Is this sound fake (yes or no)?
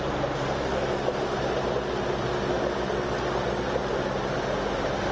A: no